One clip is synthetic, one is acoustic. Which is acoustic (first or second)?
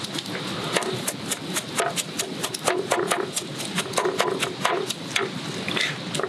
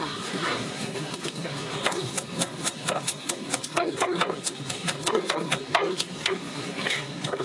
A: first